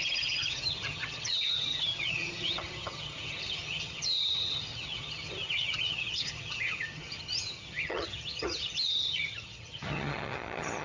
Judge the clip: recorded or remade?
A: remade